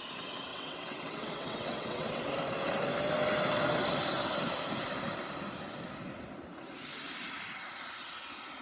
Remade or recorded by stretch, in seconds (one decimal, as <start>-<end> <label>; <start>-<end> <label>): 0.0-0.5 recorded; 0.5-2.3 remade; 2.3-8.6 recorded